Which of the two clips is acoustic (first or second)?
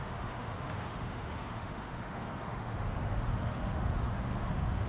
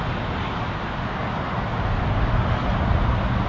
second